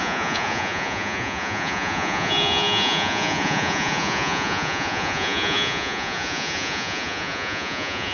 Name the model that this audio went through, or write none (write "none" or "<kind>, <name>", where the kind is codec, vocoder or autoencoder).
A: vocoder, Vocos